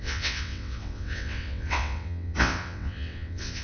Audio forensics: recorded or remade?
remade